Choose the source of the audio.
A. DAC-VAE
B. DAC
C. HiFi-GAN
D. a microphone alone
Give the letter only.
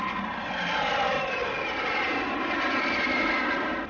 D